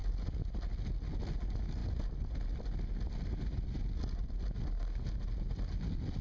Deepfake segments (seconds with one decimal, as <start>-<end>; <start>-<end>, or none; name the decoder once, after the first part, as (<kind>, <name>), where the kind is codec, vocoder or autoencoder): 0.0-0.6 (vocoder, BigVGAN v2)